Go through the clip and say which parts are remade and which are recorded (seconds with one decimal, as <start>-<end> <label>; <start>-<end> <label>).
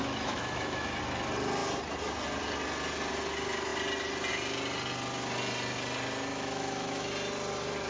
0.0-1.0 remade; 1.0-6.3 recorded; 6.3-7.1 remade; 7.1-7.9 recorded